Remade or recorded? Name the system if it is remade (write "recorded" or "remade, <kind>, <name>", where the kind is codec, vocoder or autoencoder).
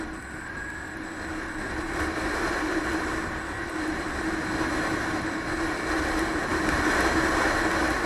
recorded